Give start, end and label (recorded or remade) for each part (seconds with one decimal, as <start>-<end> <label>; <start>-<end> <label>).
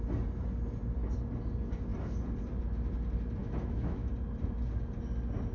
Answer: 0.0-3.4 recorded; 3.4-4.1 remade; 4.1-5.5 recorded